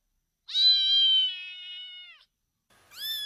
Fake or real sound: real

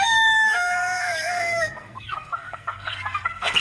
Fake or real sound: fake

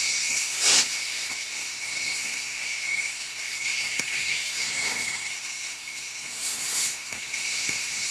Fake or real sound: fake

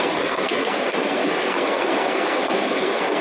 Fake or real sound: fake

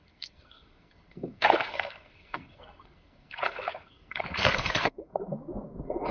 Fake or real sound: fake